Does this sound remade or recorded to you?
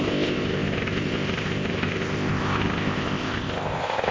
remade